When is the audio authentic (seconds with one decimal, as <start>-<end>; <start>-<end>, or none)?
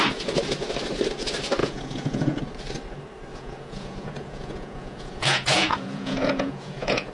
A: 0.0-1.6; 2.4-3.3